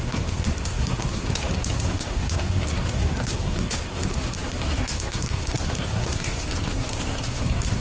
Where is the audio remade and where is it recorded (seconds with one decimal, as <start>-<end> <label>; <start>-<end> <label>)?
0.0-7.8 remade